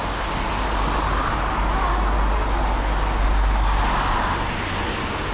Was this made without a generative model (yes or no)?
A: yes